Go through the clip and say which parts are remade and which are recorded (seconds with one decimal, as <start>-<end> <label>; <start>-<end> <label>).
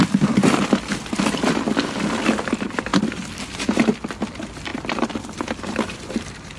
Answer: 0.0-6.6 remade